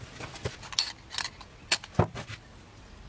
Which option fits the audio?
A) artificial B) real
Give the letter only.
B